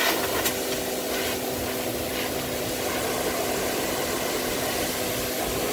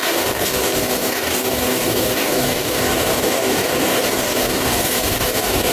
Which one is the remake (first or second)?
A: second